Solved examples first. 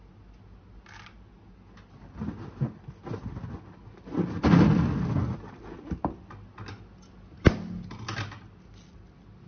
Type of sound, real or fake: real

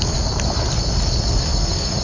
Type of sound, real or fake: fake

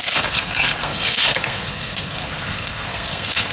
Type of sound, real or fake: fake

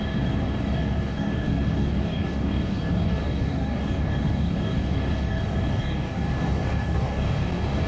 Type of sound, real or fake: fake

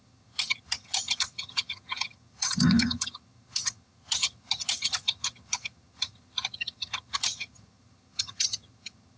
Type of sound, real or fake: fake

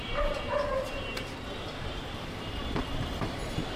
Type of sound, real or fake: fake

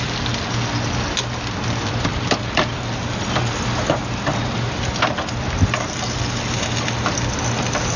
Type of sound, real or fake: real